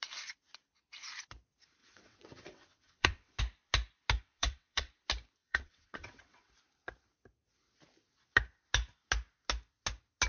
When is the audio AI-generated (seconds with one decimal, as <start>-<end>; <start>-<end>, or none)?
1.8-3.4; 4.2-4.9; 5.4-6.5